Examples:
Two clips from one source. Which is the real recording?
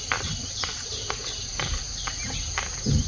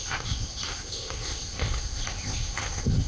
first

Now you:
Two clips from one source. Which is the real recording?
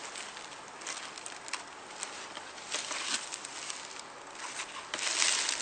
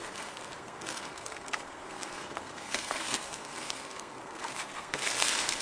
first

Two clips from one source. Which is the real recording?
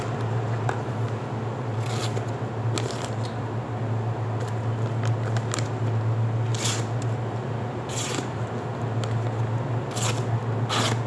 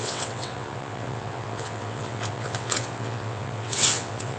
first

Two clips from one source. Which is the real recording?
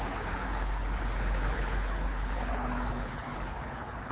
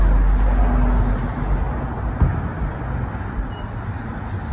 second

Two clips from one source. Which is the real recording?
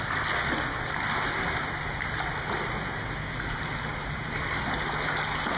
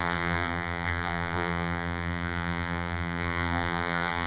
first